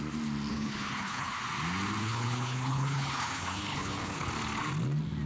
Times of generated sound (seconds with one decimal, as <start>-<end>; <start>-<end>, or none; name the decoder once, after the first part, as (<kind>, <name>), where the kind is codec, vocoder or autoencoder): 0.5-1.4 (codec, HILCodec); 2.0-4.3